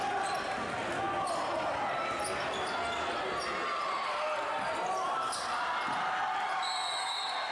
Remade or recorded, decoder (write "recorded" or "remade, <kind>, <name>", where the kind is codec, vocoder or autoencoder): recorded